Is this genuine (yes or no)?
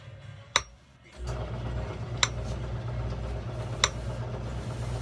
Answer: yes